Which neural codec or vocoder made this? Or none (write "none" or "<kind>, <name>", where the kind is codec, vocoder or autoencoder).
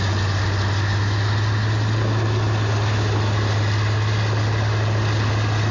none